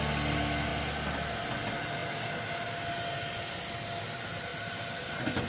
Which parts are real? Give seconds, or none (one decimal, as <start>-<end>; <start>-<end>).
0.0-5.5